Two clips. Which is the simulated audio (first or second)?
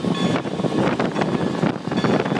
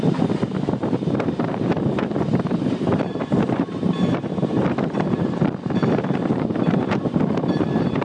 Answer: second